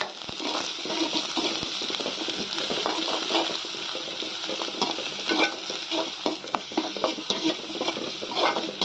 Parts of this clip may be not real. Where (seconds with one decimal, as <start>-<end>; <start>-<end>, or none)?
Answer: 6.4-7.5